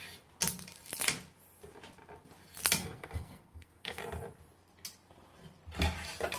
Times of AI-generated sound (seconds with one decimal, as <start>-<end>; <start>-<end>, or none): 2.8-4.0